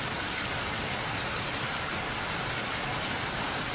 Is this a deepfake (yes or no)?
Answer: no